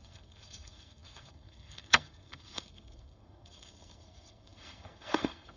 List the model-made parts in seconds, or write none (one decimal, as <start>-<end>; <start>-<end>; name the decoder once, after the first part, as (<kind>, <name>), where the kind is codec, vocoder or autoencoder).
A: 0.0-5.6 (codec, SNAC)